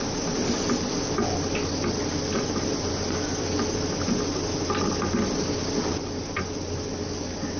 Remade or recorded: recorded